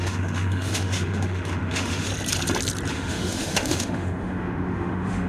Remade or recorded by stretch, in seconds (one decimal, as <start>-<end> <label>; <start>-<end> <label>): 0.0-2.1 remade; 2.1-2.9 recorded; 2.9-5.3 remade